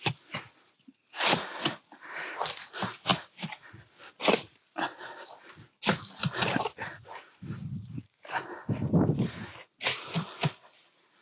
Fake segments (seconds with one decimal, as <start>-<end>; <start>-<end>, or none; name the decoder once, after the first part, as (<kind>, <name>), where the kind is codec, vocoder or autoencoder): none